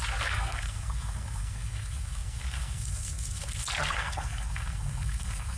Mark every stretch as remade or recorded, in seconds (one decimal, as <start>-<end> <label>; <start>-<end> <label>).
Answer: 0.0-5.6 remade